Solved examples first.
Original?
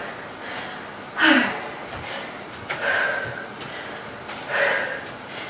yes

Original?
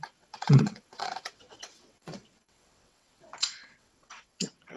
no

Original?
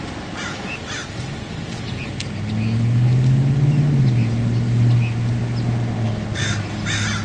yes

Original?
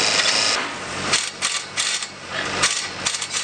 yes